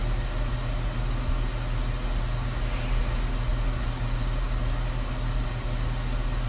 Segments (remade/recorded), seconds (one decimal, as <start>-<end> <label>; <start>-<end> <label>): 0.0-6.5 recorded